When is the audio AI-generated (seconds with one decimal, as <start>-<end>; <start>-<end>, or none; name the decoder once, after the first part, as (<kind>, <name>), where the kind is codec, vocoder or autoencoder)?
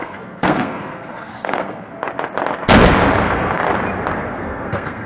0.0-1.9 (codec, SNAC); 3.2-3.6; 4.3-5.1